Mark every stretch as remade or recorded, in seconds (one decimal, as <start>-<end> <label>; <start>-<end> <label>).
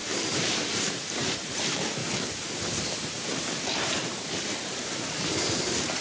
0.0-6.0 remade